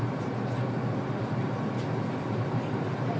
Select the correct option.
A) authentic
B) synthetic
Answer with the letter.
A